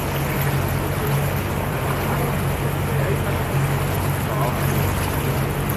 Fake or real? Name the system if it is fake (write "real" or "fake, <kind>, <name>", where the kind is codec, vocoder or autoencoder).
real